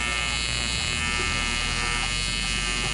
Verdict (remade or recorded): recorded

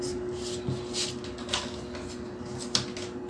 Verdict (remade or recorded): recorded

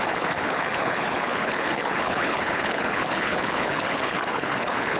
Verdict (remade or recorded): remade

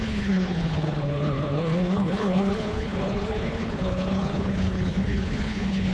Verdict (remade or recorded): remade